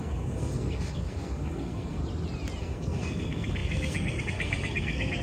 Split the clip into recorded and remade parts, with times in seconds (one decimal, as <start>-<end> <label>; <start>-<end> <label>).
0.0-2.0 remade; 2.0-2.6 recorded; 2.6-5.2 remade